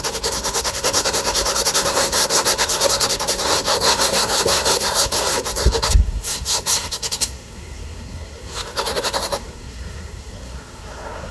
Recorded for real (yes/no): no